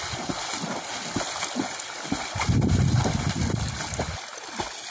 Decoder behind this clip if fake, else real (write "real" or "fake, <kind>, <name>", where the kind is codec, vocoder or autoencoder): real